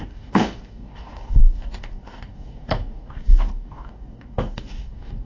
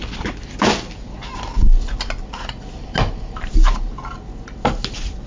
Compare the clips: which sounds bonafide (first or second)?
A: second